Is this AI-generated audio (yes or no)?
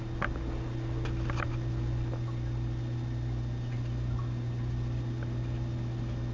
no